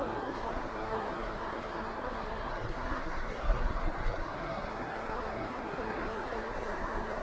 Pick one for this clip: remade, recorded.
remade